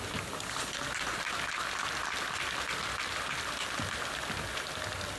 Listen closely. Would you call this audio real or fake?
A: real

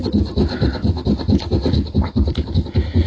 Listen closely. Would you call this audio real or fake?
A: real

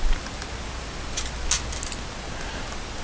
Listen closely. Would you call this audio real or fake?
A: real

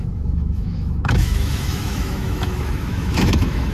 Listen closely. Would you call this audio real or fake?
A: fake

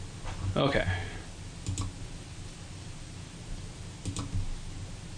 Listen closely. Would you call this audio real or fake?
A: real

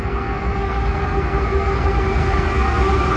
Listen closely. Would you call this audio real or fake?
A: fake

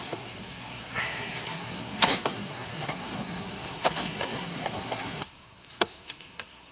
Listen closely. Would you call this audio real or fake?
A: fake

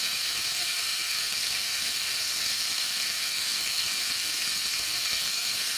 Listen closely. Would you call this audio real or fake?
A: fake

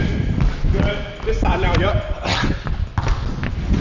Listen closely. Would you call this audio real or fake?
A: real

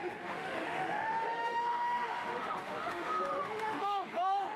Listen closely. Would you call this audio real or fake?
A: fake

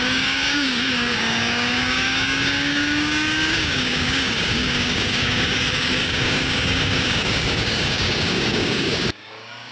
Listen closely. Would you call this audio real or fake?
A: fake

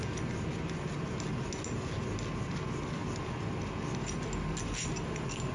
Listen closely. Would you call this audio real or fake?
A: real